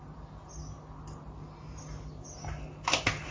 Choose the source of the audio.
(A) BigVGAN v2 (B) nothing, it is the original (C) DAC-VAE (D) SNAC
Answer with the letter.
B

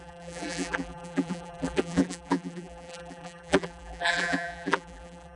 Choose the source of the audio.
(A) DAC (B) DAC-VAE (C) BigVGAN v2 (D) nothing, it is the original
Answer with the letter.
C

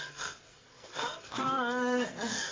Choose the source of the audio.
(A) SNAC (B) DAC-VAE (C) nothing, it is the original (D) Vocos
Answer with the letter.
A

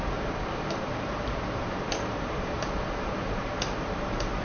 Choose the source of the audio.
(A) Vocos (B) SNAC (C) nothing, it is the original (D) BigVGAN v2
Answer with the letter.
D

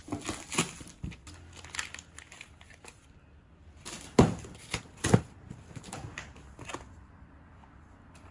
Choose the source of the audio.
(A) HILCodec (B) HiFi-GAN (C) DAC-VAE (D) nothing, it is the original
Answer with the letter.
D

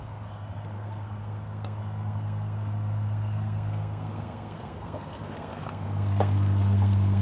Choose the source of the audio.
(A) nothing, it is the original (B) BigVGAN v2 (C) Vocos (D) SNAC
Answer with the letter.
D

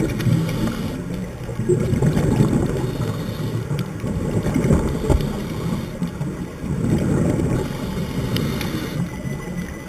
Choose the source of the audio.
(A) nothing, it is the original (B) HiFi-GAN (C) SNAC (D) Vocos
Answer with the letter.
A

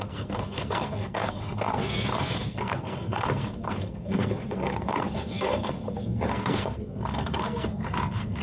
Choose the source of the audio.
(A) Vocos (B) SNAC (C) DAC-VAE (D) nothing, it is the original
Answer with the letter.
B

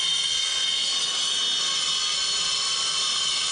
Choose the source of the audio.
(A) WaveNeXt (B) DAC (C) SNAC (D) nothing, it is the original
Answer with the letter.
D